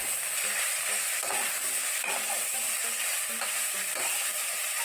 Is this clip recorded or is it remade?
recorded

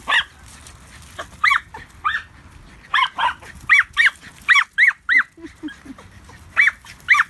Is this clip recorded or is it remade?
recorded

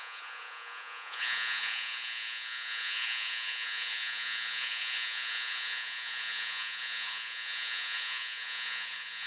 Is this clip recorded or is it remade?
remade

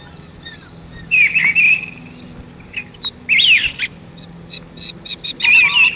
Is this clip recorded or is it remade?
recorded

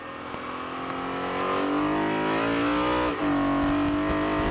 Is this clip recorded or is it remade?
recorded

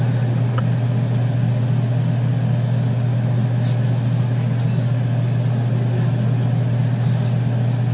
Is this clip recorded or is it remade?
recorded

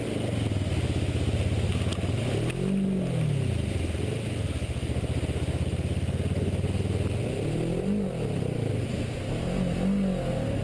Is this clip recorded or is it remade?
recorded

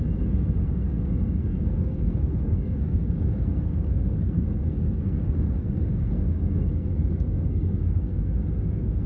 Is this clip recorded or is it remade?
remade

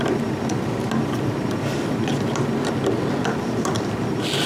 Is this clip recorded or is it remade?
recorded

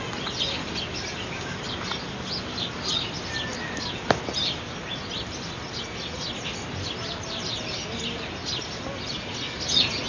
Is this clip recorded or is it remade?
recorded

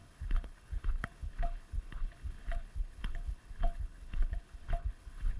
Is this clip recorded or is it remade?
remade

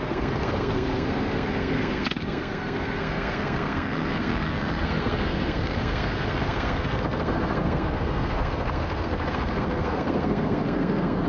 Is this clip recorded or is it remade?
remade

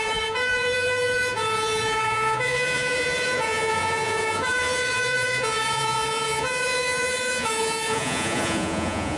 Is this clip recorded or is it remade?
remade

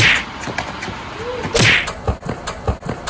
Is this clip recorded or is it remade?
recorded